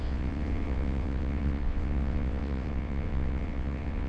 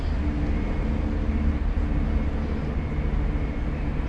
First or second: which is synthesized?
first